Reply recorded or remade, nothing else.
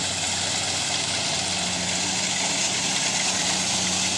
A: recorded